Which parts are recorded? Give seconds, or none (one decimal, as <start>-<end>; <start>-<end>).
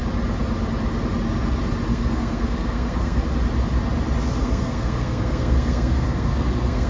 0.0-1.9; 3.2-4.4